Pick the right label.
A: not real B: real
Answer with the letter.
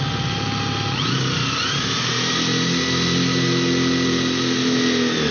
B